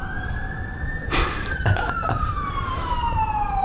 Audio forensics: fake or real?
fake